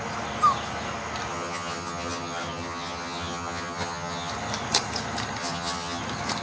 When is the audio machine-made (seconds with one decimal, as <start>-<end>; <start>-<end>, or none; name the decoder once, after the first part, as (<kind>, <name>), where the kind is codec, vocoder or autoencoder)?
1.3-4.3 (vocoder, HiFi-GAN); 5.4-6.0